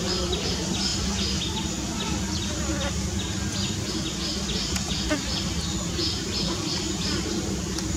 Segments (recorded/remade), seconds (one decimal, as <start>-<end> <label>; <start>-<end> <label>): 0.0-8.0 recorded